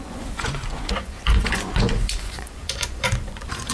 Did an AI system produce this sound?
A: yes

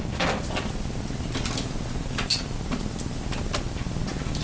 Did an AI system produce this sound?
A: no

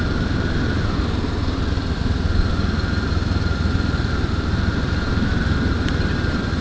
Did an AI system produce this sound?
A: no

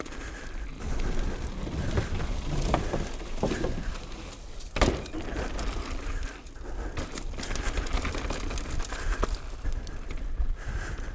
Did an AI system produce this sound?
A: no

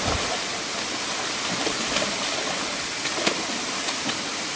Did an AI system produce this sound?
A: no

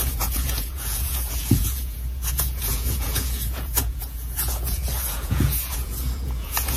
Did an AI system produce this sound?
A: yes